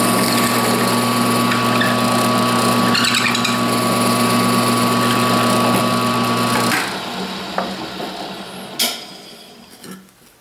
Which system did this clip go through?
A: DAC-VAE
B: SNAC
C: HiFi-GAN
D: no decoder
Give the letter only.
D